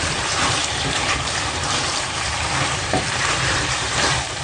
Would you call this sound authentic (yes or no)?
no